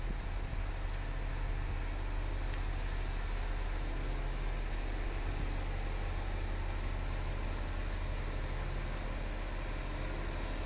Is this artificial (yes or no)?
no